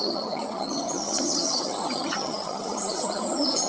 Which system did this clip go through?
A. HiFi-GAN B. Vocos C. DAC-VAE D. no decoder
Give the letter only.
A